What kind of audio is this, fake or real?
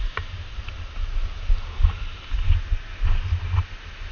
real